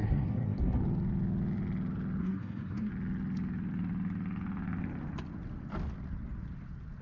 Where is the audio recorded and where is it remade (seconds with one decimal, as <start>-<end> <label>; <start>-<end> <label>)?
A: 0.0-0.8 remade; 0.8-2.2 recorded; 2.2-2.9 remade; 2.9-7.0 recorded